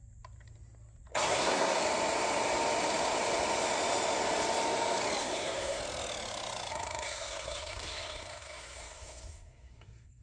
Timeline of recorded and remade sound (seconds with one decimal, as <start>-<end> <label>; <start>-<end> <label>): 0.0-1.1 recorded; 1.1-1.8 remade; 1.8-5.2 recorded; 5.2-5.8 remade; 5.8-6.7 recorded; 6.7-10.2 remade